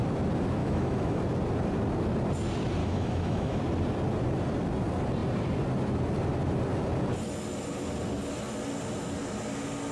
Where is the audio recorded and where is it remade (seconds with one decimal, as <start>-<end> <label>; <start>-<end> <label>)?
0.0-0.6 recorded; 0.6-1.2 remade; 1.2-2.8 recorded; 2.8-3.6 remade; 3.6-9.9 recorded